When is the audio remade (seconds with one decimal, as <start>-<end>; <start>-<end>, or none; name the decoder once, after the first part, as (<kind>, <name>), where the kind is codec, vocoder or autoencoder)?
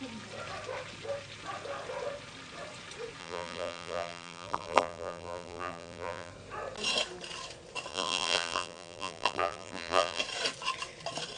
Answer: 3.2-6.3 (vocoder, BigVGAN v2); 7.9-10.2